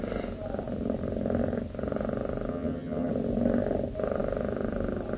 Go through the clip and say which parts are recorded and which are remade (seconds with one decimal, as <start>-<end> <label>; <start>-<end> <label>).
0.0-2.5 recorded; 2.5-3.1 remade; 3.1-5.2 recorded